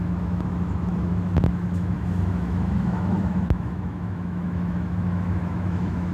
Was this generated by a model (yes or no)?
yes